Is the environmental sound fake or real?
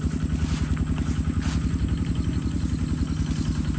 real